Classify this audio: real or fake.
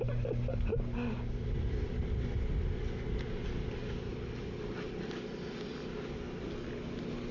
real